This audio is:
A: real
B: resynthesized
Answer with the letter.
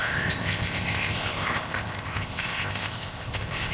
B